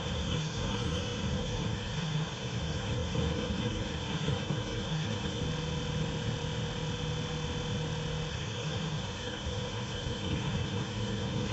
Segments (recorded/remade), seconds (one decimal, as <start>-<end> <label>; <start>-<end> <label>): 0.0-5.4 remade; 5.4-8.3 recorded; 8.3-11.5 remade